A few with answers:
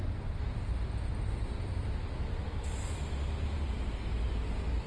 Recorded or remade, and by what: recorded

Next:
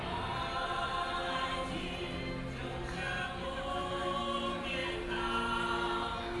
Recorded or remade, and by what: recorded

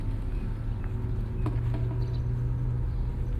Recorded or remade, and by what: recorded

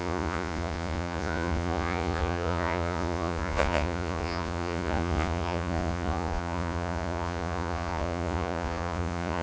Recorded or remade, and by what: remade, vocoder, Vocos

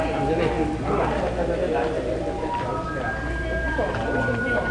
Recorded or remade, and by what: recorded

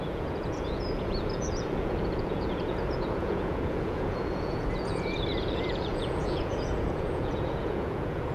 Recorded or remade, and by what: remade, vocoder, Vocos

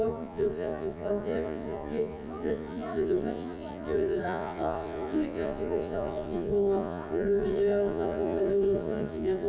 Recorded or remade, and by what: remade, vocoder, Vocos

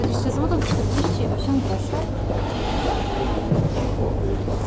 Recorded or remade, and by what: recorded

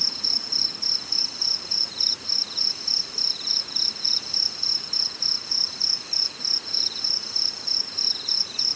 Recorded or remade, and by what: remade, vocoder, Vocos